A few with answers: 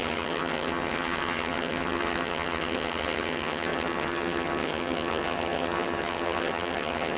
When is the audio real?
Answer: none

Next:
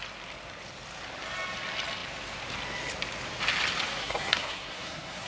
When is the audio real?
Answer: 0.0-4.0

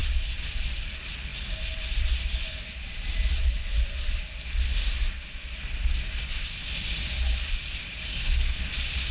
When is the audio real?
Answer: 0.0-8.1; 8.6-9.1

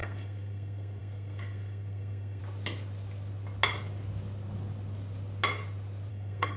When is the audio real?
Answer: 2.4-6.1

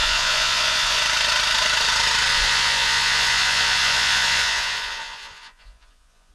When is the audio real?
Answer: 1.0-2.3

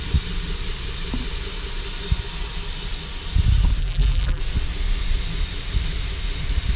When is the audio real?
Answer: 0.0-3.8; 4.4-6.8